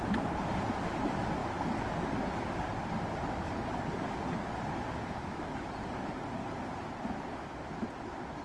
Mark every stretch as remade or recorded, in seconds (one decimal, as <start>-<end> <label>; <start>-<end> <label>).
0.0-8.4 recorded